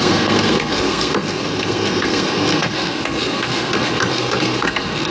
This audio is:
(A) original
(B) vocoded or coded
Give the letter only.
B